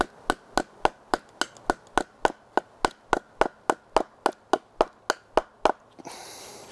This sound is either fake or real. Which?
real